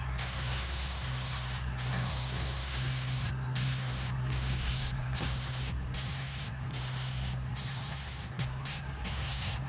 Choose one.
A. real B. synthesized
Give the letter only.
B